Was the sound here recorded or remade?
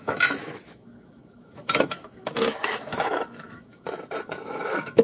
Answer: remade